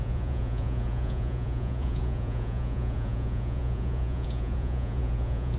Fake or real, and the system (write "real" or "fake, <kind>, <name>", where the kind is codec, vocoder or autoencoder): fake, vocoder, Vocos